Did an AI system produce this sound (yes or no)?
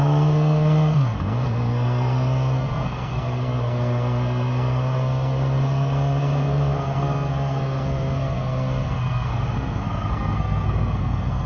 yes